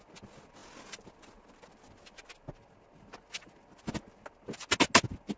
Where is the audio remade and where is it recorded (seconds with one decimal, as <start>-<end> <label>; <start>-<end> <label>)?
0.0-5.4 recorded